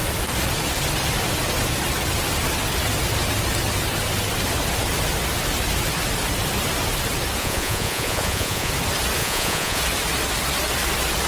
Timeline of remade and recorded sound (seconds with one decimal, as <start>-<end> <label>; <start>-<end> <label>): 0.0-7.4 recorded; 7.4-8.7 remade; 8.7-9.2 recorded; 9.2-9.8 remade; 9.8-11.3 recorded

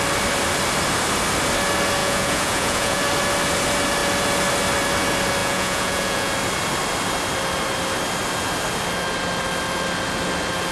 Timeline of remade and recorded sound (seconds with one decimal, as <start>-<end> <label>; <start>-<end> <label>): 0.0-2.0 recorded; 2.0-3.0 remade; 3.0-5.4 recorded; 5.4-6.3 remade; 6.3-10.7 recorded

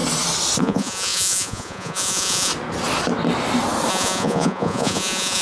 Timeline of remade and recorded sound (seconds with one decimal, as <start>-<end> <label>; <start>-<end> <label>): 0.0-0.6 recorded; 0.6-2.5 remade; 2.5-3.9 recorded; 3.9-5.4 remade